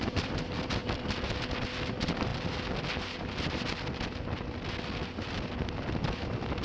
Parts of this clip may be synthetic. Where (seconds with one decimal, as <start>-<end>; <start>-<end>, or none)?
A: 0.0-0.8; 1.9-2.3; 5.9-6.6